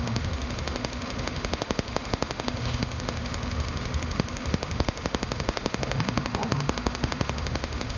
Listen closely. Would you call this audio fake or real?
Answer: fake